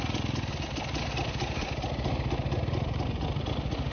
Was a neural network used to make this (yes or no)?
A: no